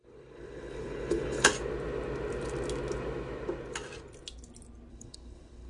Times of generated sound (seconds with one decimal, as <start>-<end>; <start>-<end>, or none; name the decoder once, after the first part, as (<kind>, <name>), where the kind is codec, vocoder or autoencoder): 0.0-1.5 (codec, HILCodec); 4.9-5.7